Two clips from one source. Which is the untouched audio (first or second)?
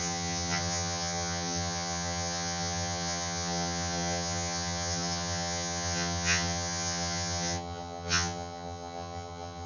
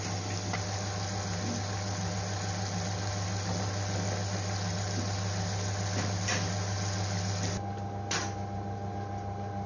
second